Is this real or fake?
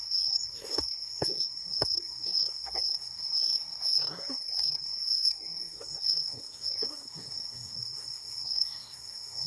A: fake